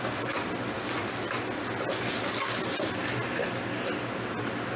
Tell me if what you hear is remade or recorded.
recorded